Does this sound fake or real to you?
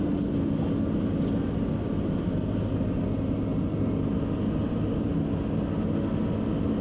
real